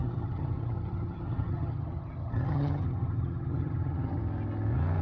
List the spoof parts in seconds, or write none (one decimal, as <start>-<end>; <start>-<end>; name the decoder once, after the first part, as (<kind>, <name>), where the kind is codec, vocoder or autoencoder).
0.0-4.2 (vocoder, HiFi-GAN)